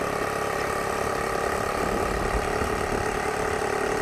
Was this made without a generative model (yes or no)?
yes